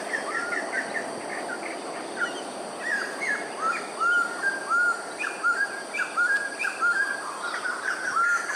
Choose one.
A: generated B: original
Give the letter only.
B